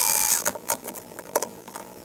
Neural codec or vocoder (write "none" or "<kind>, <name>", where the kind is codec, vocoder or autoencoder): vocoder, BigVGAN v2